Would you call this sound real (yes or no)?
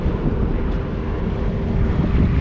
yes